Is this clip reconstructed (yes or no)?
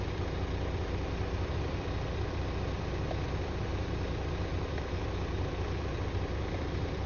yes